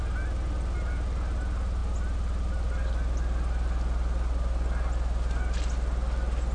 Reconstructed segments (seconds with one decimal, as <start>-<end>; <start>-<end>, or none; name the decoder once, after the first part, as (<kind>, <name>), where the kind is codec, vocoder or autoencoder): none